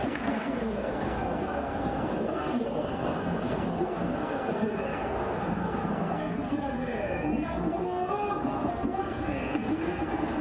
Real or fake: fake